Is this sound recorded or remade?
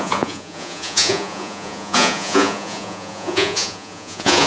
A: remade